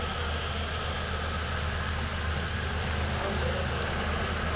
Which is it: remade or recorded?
recorded